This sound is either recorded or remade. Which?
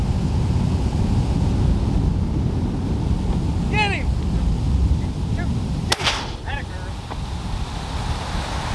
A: recorded